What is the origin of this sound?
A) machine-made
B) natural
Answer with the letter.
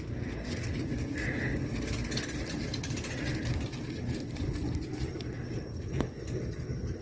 B